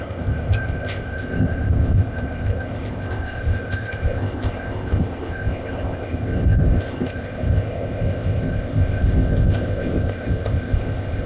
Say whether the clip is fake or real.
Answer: fake